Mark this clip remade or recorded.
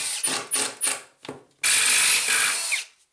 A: recorded